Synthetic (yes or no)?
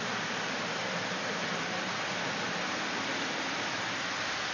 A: no